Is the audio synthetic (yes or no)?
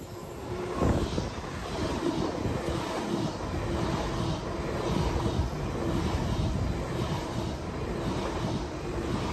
no